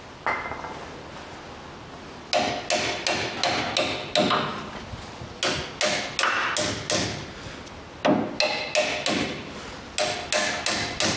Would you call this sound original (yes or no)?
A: yes